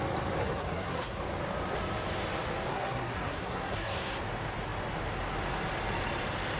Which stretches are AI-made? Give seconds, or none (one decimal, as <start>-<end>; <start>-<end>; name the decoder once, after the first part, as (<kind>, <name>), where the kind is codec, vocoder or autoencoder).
0.4-1.2 (codec, SNAC); 2.7-4.2